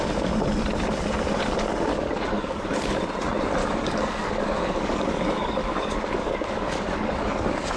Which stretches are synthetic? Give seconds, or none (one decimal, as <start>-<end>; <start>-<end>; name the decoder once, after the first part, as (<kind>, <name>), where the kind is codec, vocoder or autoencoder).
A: 1.9-3.0 (codec, DAC); 3.6-7.8